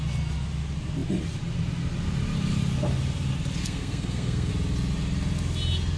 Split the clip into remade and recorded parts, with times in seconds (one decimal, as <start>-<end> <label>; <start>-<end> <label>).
0.0-3.6 recorded; 3.6-4.5 remade; 4.5-6.0 recorded